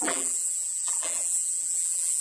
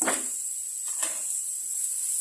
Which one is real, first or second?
second